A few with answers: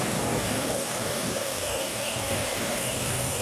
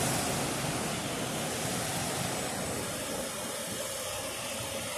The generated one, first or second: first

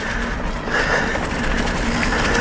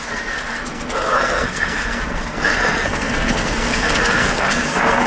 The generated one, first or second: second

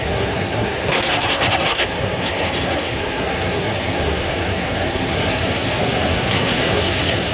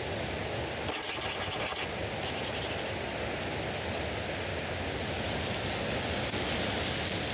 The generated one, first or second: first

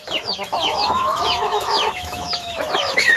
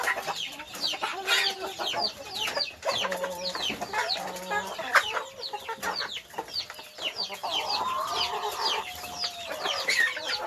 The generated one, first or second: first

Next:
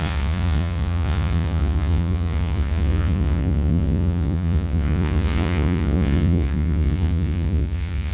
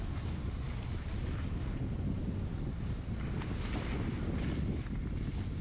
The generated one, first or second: first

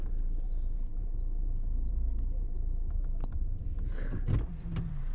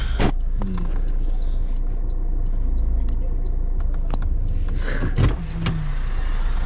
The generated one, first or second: first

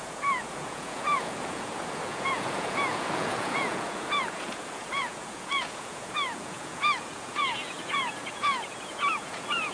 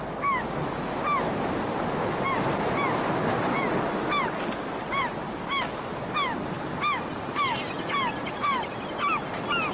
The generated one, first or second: first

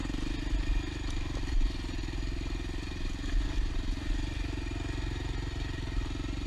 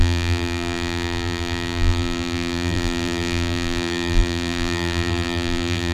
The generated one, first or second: second